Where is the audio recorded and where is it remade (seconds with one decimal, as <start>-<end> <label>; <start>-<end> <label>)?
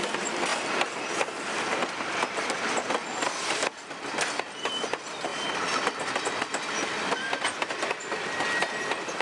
0.0-9.2 recorded